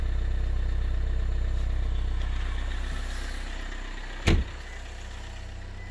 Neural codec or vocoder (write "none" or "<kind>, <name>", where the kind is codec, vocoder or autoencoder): none